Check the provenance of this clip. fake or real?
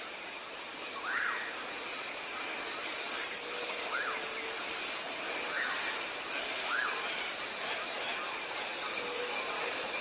real